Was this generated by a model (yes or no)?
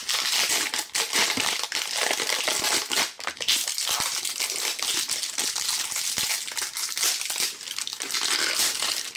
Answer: no